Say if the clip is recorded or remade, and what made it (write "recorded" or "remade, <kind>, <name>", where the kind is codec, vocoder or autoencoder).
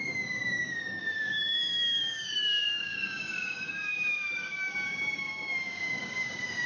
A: remade, codec, DAC